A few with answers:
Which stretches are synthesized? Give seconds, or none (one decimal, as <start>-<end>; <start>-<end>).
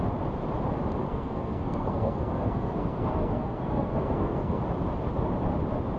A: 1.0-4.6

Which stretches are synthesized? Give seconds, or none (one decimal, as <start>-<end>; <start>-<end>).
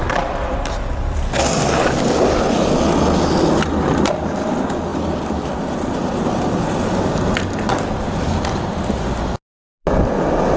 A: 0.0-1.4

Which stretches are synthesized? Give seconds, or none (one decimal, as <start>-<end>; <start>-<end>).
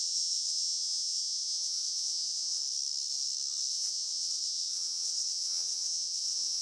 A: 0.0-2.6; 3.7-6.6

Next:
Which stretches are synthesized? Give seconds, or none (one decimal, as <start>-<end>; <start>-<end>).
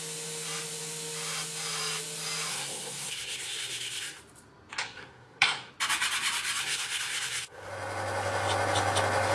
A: 2.5-4.2; 4.8-5.7; 6.6-7.7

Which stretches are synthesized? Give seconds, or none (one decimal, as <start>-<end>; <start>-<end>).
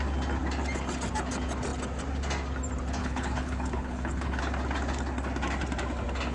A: 3.0-4.4